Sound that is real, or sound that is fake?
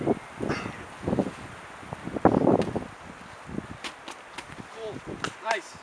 real